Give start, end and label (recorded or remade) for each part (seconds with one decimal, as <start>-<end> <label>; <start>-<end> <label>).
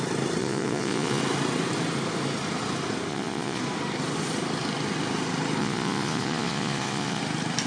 0.0-0.4 recorded; 0.4-1.2 remade; 1.2-3.1 recorded; 3.1-3.6 remade; 3.6-5.6 recorded; 5.6-7.2 remade; 7.2-7.7 recorded